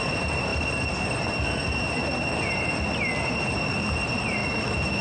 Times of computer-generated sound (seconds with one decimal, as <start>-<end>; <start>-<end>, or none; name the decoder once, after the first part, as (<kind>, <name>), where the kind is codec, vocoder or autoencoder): 4.4-5.0 (autoencoder, DAC-VAE)